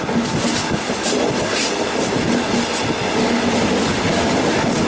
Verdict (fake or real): real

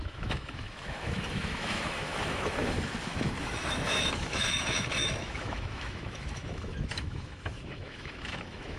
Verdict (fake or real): fake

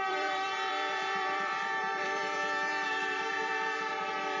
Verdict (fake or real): fake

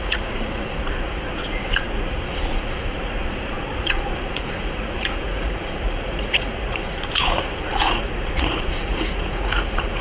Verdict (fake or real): fake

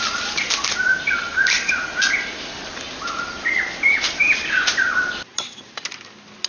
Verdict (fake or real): real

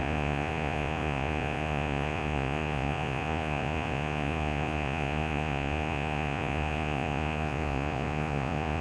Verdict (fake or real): fake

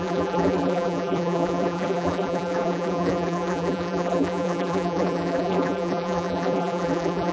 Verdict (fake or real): fake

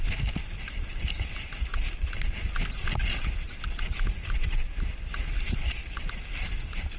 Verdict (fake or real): real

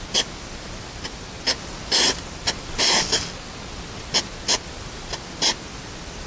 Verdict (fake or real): real